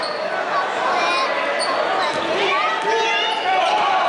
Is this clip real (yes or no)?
yes